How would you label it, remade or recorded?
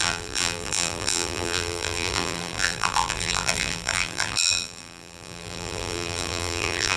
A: remade